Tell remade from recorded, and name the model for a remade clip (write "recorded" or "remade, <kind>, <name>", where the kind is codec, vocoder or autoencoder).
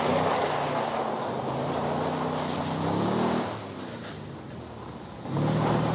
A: recorded